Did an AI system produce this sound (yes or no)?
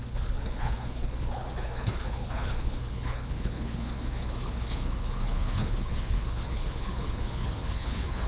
yes